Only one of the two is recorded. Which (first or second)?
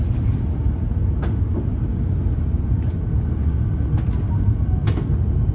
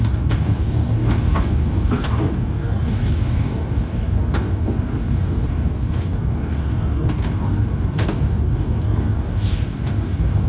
first